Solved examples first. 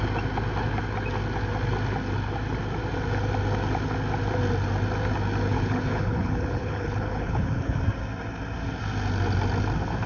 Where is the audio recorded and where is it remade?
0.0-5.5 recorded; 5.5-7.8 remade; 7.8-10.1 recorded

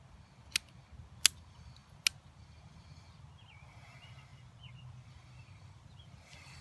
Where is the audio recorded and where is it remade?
0.0-6.6 recorded

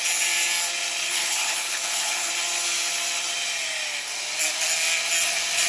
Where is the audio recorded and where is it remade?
0.0-1.0 recorded; 1.0-2.3 remade; 2.3-5.7 recorded

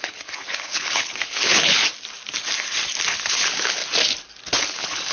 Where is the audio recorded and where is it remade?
0.0-1.8 remade; 1.8-3.3 recorded; 3.3-3.8 remade; 3.8-4.6 recorded; 4.6-5.1 remade

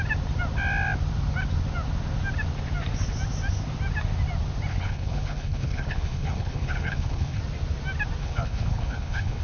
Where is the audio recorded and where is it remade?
0.0-4.7 recorded; 4.7-7.4 remade; 7.4-8.2 recorded; 8.2-9.4 remade